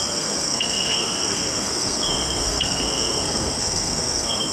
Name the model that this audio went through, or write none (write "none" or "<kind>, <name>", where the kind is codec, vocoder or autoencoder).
codec, SNAC